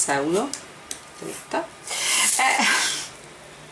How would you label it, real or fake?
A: real